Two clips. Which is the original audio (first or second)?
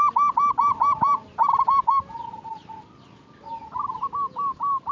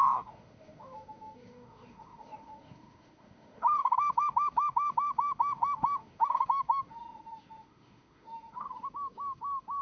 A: first